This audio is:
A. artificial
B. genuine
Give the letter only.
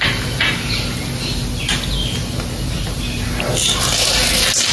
B